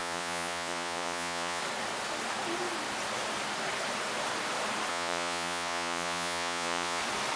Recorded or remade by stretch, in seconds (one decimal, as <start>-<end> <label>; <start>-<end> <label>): 0.0-1.6 remade; 1.6-4.9 recorded; 4.9-7.0 remade; 7.0-7.4 recorded

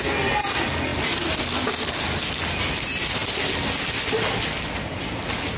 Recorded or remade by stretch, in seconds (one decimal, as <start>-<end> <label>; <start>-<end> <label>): 0.0-5.6 recorded

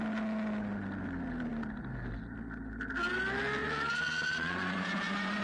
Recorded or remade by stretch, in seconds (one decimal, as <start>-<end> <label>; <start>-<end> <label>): 0.0-3.6 recorded; 3.6-5.4 remade

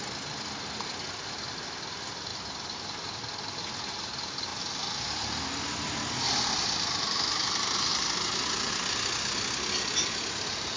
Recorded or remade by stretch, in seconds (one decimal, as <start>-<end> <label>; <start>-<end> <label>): 0.0-10.8 recorded